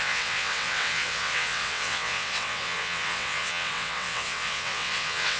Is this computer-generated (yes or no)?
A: yes